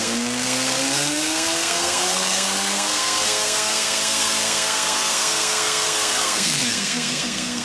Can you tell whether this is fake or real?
fake